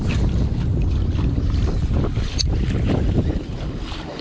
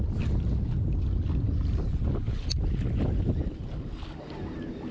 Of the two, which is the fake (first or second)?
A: first